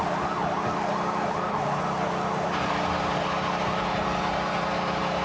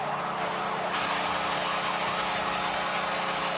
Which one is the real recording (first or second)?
second